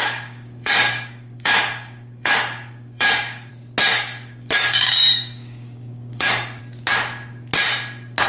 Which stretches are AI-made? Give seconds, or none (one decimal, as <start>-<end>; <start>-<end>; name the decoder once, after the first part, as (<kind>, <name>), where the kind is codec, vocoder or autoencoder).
0.0-3.5 (codec, DAC); 3.9-6.6